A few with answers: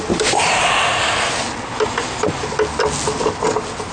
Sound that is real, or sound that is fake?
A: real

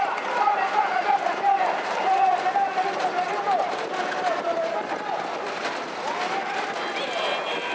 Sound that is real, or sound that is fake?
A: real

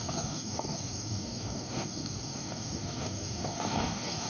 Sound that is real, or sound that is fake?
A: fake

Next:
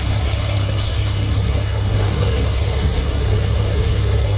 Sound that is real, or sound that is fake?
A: fake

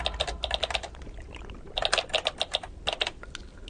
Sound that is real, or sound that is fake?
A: real